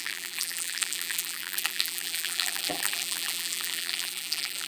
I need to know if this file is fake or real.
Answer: fake